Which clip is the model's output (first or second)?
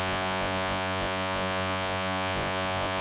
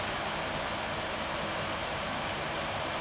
first